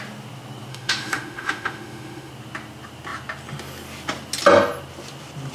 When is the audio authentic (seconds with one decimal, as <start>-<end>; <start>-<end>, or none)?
0.0-0.7; 2.3-5.5